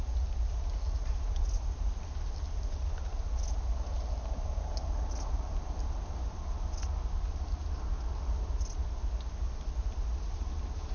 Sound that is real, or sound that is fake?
real